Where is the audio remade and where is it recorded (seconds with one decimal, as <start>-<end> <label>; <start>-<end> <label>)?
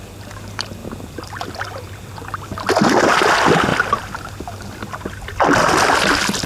0.0-6.5 recorded